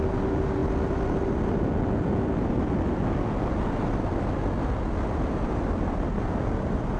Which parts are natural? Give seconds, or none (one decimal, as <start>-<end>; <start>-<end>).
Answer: 0.0-7.0